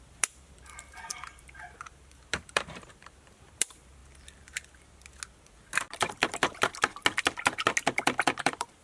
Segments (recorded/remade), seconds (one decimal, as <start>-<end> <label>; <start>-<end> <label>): 0.0-4.0 remade; 4.0-5.8 recorded; 5.8-6.9 remade; 6.9-8.4 recorded; 8.4-8.8 remade